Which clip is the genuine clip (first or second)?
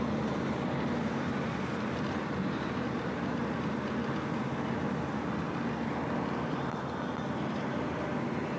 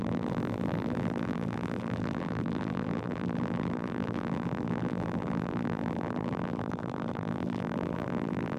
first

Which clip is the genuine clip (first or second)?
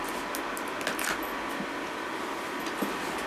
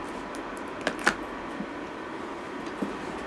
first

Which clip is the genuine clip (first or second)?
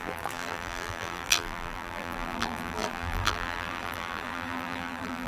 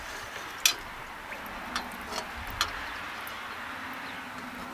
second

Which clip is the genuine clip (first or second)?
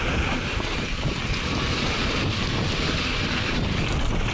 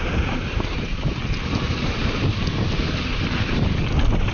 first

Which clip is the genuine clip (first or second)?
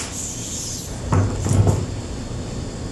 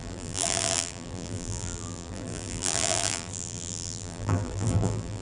first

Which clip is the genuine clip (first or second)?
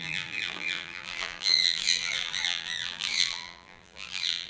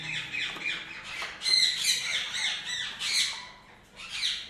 second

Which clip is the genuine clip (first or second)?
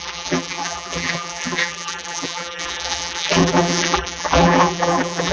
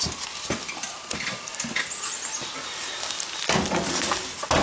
second